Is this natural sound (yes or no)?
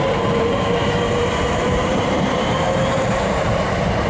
no